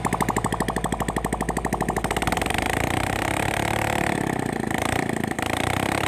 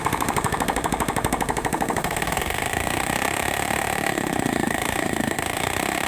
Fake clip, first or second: second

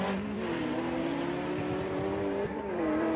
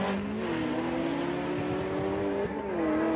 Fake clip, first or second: first